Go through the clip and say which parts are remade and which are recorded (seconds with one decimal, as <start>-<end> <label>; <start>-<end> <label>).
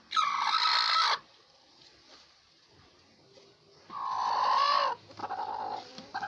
0.0-0.7 recorded; 0.7-2.3 remade; 2.3-4.2 recorded; 4.2-4.7 remade; 4.7-5.2 recorded; 5.2-6.3 remade